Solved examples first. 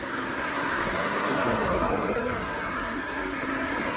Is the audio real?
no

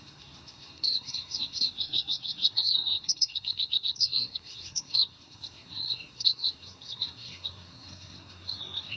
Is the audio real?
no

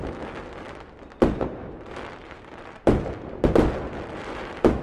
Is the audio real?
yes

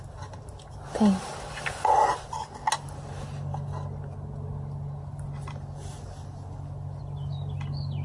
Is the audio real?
yes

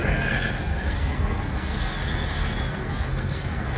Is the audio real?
no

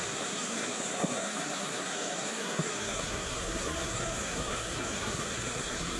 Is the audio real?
no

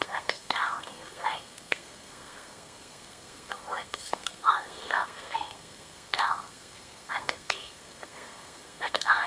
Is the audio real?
no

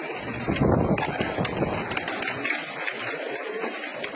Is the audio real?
yes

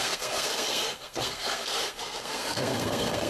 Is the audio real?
no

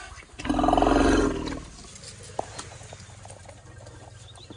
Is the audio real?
yes